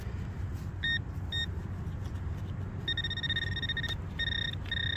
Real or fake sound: real